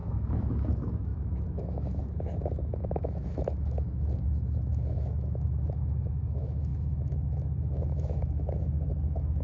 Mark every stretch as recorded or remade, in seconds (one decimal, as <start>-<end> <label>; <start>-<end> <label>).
0.0-9.4 remade